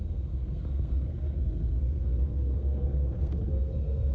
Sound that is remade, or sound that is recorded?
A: remade